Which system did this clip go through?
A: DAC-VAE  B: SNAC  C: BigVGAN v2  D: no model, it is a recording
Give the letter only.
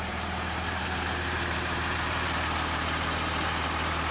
C